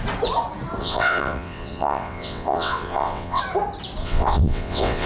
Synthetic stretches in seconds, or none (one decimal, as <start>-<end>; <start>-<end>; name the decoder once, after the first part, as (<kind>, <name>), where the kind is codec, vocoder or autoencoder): 0.8-3.4 (vocoder, WaveNeXt); 4.0-5.1